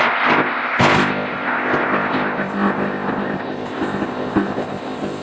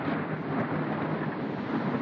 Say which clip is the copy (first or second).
first